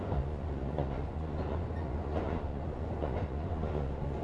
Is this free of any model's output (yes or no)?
no